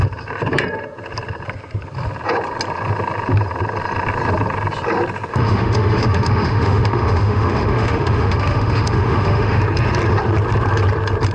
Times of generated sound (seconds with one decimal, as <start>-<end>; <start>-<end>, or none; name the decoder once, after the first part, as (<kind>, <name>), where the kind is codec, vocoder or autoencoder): 5.3-9.6 (autoencoder, DAC-VAE)